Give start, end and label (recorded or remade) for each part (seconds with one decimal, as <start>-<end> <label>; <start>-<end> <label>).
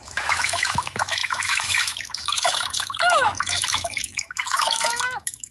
0.0-5.5 remade